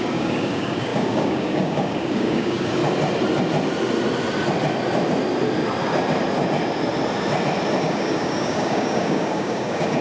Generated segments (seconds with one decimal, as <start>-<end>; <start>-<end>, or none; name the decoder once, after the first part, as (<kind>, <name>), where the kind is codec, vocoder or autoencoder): 0.0-2.8 (codec, DAC); 7.8-10.0